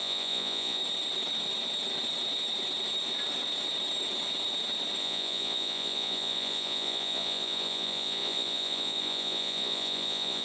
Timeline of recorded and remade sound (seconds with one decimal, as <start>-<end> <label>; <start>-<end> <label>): 0.0-0.8 remade; 0.8-5.0 recorded; 5.0-10.4 remade